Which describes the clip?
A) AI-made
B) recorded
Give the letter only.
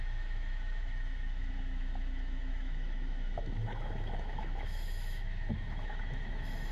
A